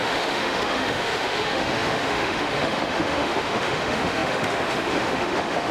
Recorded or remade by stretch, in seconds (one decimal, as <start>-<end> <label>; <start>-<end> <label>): 0.0-5.7 remade